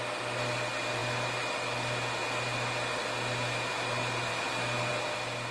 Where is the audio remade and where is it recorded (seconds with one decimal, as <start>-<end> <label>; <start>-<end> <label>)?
0.0-5.5 recorded